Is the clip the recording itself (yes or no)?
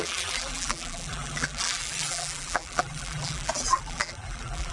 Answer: no